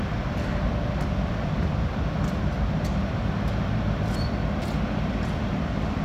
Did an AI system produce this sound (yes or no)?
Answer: no